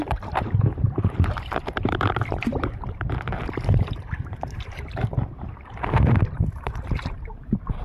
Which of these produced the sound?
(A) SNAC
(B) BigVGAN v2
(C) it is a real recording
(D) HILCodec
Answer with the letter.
B